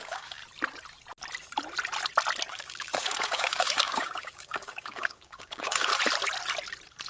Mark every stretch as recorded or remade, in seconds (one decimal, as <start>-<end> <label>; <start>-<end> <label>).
0.0-0.4 remade; 0.4-2.5 recorded; 2.5-5.9 remade; 5.9-7.1 recorded